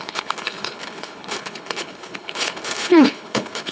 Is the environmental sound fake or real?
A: fake